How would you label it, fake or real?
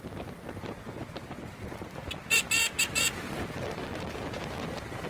real